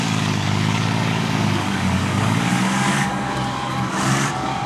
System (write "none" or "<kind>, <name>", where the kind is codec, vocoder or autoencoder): codec, DAC